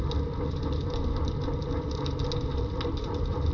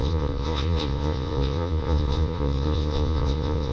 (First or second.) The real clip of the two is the first